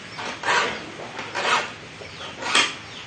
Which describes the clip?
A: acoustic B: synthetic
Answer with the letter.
A